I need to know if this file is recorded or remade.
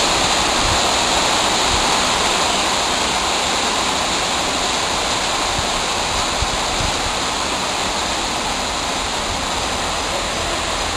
recorded